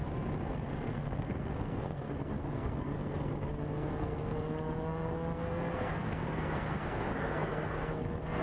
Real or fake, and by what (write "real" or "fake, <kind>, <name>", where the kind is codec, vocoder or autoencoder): fake, codec, SNAC